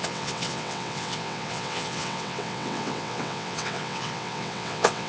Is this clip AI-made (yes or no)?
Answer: yes